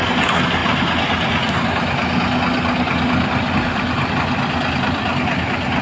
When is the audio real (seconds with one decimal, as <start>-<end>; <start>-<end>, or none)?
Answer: 0.0-5.8